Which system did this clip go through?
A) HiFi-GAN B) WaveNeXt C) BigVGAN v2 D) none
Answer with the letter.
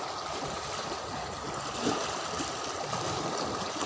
C